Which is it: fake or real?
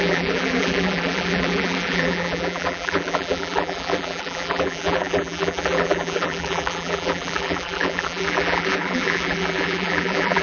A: fake